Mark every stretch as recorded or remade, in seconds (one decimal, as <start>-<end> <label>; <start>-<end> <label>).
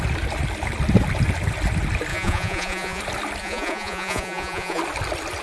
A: 0.0-2.1 recorded; 2.1-3.0 remade; 3.0-3.4 recorded; 3.4-4.8 remade; 4.8-5.4 recorded